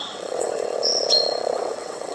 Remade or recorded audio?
remade